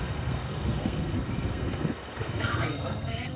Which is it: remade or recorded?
remade